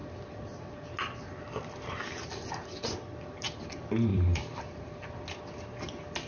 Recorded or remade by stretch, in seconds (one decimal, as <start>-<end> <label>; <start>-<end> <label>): 0.0-0.9 remade; 0.9-4.1 recorded; 4.1-5.1 remade; 5.1-6.3 recorded